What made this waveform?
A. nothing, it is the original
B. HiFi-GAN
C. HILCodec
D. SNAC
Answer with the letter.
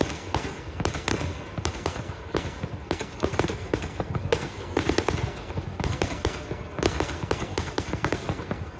D